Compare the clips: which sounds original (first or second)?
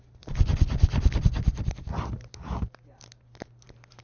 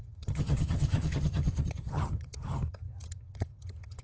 first